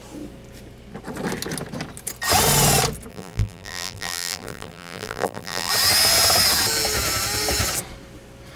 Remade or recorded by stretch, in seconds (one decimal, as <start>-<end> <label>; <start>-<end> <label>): 0.0-3.1 recorded; 3.1-5.7 remade; 5.7-8.6 recorded

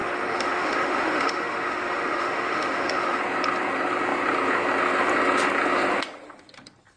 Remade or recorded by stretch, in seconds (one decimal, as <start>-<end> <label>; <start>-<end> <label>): 0.0-3.2 remade; 3.2-7.0 recorded

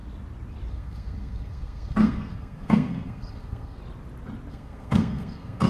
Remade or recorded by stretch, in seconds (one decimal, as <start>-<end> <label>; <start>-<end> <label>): 0.0-0.7 recorded; 0.7-3.8 remade; 3.8-4.5 recorded; 4.5-5.7 remade

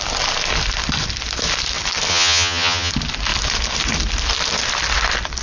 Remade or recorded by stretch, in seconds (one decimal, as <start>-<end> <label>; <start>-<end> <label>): 0.0-2.1 recorded; 2.1-2.9 remade; 2.9-5.4 recorded

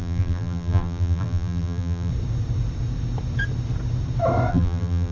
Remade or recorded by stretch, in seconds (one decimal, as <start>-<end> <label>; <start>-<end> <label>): 0.0-2.1 remade; 2.1-4.5 recorded; 4.5-5.1 remade

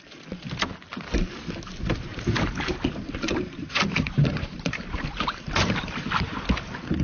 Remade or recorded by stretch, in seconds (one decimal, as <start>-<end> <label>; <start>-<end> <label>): 0.0-2.1 recorded; 2.1-6.1 remade; 6.1-7.0 recorded

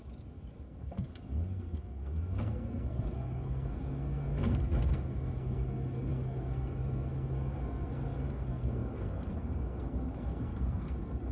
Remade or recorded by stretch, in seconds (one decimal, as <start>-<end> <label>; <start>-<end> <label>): 0.0-0.5 recorded; 0.5-11.3 remade

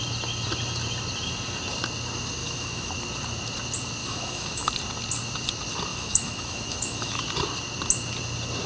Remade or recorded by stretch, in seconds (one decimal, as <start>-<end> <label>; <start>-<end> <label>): 0.0-2.4 recorded; 2.4-2.9 remade; 2.9-4.0 recorded; 4.0-4.7 remade; 4.7-5.9 recorded; 5.9-7.2 remade; 7.2-8.7 recorded